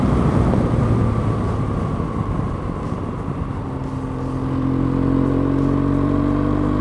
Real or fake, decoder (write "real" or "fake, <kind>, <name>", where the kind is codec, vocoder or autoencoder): real